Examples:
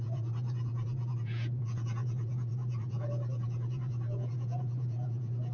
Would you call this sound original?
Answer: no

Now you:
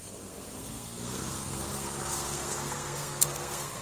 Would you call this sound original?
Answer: no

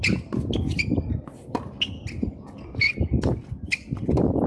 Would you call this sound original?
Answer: yes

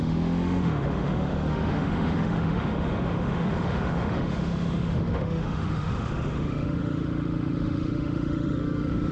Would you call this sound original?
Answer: no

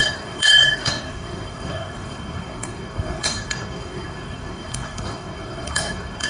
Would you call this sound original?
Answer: no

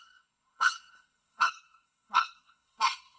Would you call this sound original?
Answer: no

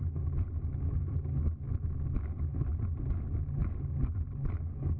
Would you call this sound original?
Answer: yes